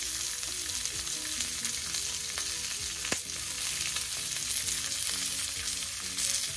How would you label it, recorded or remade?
recorded